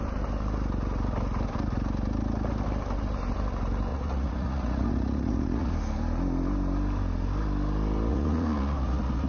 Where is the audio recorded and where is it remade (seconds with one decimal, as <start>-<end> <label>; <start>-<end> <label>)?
0.0-3.9 recorded; 3.9-5.7 remade; 5.7-8.1 recorded; 8.1-9.3 remade